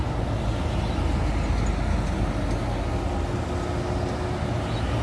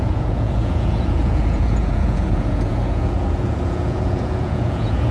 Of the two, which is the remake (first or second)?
second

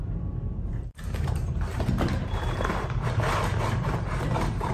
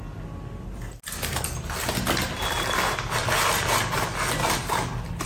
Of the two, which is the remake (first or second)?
first